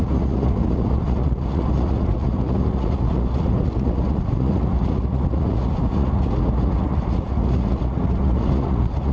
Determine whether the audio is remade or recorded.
remade